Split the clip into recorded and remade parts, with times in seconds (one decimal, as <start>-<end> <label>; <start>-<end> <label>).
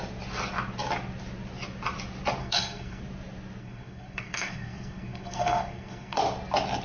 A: 0.0-2.4 recorded; 2.4-3.0 remade; 3.0-3.6 recorded; 3.6-6.2 remade; 6.2-6.8 recorded